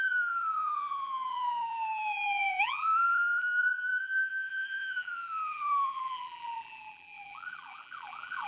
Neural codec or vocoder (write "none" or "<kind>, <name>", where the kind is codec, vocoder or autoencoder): vocoder, BigVGAN v2